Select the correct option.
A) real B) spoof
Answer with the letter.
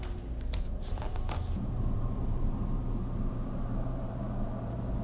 B